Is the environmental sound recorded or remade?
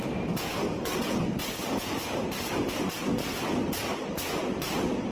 recorded